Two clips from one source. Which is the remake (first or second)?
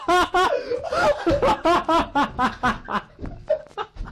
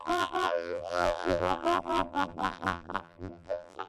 second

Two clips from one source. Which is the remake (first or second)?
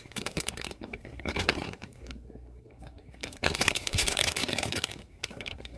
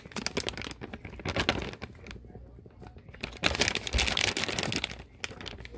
first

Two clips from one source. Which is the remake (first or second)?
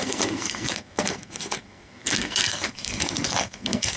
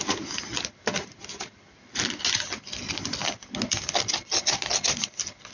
first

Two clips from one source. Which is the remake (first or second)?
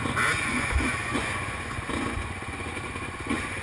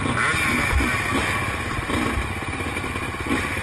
first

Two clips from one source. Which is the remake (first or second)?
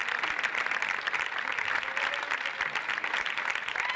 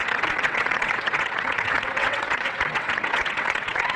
second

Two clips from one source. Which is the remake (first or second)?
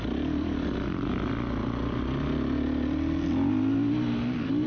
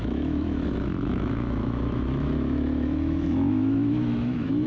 second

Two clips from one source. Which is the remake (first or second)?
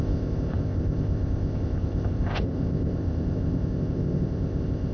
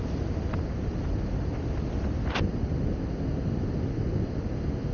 first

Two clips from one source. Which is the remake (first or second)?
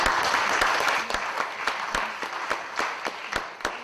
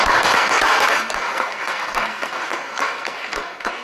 second